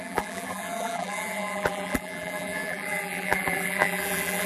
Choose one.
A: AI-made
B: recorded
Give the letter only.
A